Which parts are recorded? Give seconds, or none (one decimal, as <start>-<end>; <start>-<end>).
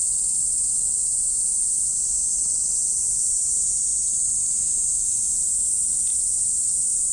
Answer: 0.0-7.1